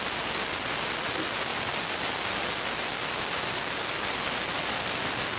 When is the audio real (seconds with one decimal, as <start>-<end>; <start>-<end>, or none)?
0.0-5.4